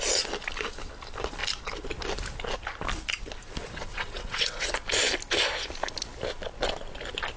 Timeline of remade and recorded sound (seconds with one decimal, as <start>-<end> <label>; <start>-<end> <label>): 0.0-3.6 recorded; 3.6-4.7 remade; 4.7-7.4 recorded

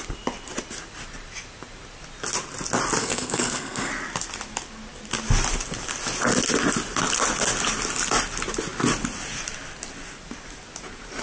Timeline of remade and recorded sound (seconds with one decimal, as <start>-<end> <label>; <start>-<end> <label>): 0.0-3.0 recorded; 3.0-3.9 remade; 3.9-11.2 recorded

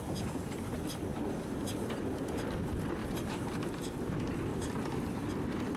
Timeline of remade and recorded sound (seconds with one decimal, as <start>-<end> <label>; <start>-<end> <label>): 0.0-3.0 recorded; 3.0-3.7 remade; 3.7-4.5 recorded; 4.5-5.3 remade; 5.3-5.8 recorded